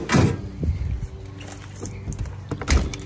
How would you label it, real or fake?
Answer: real